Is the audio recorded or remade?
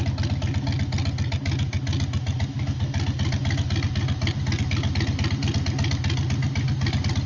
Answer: recorded